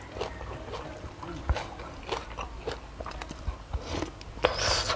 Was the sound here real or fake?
real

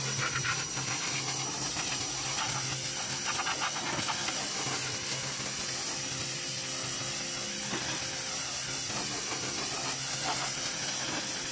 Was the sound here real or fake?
real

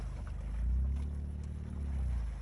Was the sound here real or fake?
real